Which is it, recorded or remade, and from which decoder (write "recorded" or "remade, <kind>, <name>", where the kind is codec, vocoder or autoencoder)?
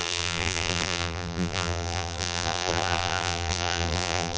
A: remade, vocoder, BigVGAN v2